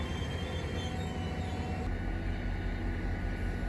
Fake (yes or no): no